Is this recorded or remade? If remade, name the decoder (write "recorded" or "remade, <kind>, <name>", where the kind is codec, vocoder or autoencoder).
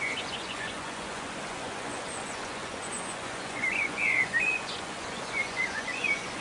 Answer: remade, vocoder, Vocos